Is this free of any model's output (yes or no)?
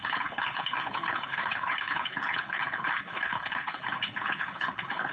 no